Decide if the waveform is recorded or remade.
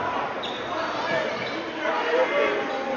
recorded